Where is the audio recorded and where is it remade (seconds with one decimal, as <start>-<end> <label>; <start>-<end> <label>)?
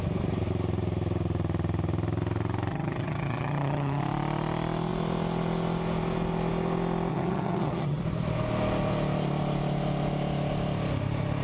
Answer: 0.0-2.7 recorded; 2.7-4.0 remade; 4.0-7.1 recorded; 7.1-8.0 remade; 8.0-11.4 recorded